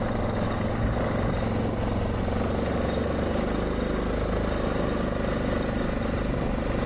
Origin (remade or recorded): recorded